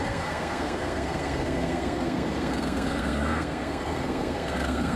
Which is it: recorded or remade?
remade